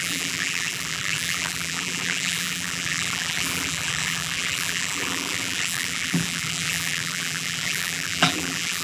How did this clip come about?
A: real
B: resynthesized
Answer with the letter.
B